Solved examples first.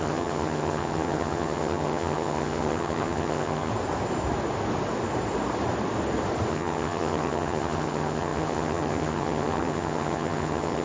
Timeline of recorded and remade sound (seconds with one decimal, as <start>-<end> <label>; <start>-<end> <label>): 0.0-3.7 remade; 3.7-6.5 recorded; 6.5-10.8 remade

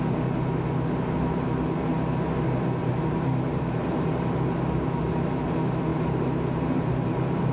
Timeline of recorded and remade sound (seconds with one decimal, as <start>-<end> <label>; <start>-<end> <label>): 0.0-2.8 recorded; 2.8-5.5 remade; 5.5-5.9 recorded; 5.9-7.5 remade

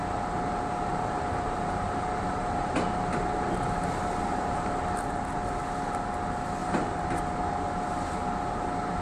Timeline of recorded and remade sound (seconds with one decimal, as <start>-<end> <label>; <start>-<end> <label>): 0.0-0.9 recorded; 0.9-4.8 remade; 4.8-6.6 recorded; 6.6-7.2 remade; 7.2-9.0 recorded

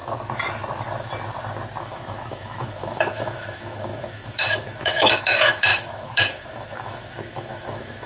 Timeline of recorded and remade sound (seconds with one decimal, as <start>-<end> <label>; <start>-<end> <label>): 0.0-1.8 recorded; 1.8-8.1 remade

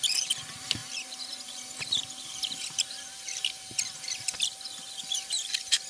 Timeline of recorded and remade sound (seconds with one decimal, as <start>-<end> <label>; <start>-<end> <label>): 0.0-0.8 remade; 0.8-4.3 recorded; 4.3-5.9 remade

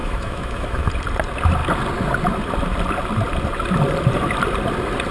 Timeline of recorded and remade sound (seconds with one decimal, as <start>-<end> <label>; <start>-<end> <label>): 0.0-0.9 remade; 0.9-5.1 recorded

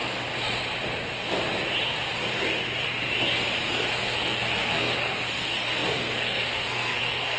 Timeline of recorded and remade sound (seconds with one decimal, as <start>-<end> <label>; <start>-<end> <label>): 0.0-3.9 recorded; 3.9-7.4 remade